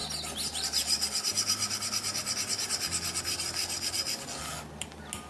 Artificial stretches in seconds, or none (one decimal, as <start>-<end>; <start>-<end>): none